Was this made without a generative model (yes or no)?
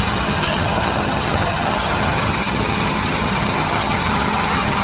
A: no